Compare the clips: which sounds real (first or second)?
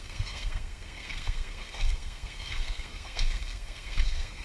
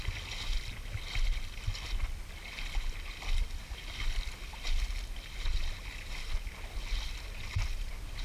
second